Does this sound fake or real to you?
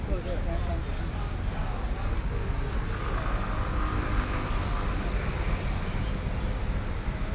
real